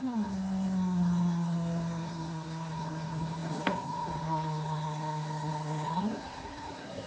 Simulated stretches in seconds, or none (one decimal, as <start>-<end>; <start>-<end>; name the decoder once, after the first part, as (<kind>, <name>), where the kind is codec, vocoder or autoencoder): 0.0-7.1 (codec, SNAC)